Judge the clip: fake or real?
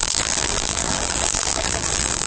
fake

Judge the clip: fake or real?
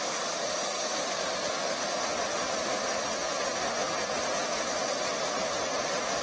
real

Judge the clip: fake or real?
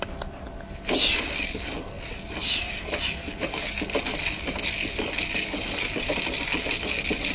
real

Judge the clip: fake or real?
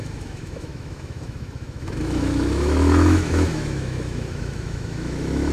fake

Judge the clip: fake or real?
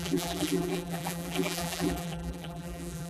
fake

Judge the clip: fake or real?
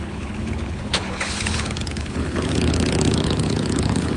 fake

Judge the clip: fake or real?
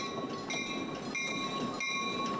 real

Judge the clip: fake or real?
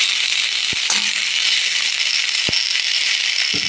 real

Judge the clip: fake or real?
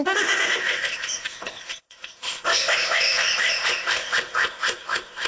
fake